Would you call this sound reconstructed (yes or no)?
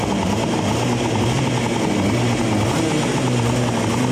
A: no